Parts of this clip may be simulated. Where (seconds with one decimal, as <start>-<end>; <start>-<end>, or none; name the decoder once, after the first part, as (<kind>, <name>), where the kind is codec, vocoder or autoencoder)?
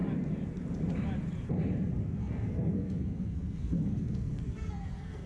2.0-5.3 (codec, SNAC)